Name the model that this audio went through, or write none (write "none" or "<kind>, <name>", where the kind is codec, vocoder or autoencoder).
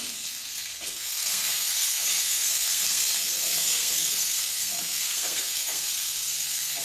codec, SNAC